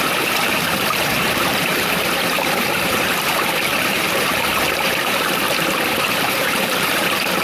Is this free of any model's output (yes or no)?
no